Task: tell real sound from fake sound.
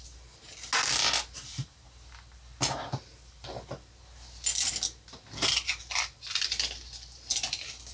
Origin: real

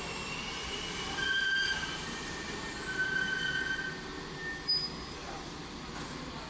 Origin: real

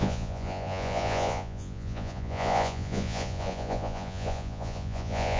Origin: fake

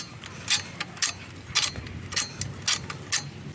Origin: real